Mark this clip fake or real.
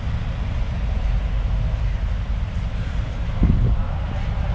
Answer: real